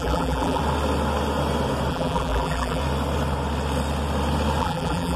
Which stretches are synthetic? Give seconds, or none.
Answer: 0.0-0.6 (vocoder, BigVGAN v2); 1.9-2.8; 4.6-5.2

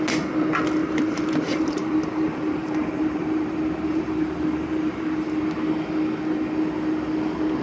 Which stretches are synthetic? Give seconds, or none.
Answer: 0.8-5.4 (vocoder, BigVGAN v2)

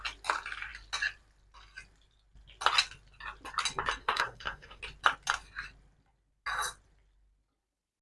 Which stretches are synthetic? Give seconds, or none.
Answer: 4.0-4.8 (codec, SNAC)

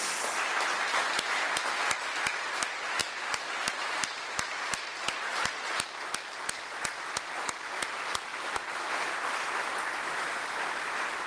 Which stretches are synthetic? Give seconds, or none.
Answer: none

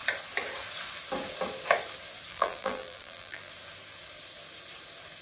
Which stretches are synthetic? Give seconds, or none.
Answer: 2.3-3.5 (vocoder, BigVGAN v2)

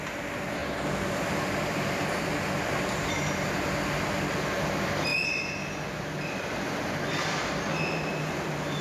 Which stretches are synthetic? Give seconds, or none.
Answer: 0.6-2.3 (vocoder, BigVGAN v2)